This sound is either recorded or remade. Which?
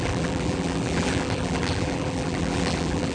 remade